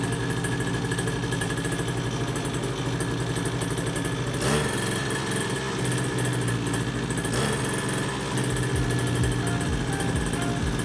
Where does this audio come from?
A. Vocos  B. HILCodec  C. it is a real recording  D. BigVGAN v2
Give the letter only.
C